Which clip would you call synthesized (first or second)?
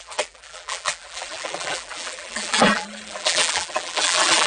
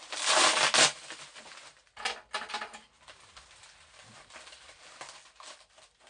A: first